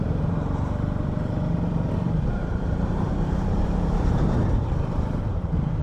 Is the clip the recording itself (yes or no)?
no